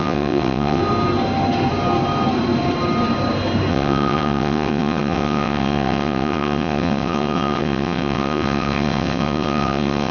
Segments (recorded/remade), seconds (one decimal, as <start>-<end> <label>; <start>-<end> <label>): 0.0-0.8 remade; 0.8-3.7 recorded; 3.7-10.1 remade